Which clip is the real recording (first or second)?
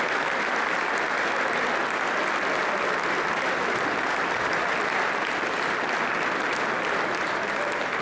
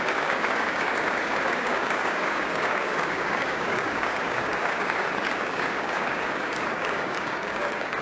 first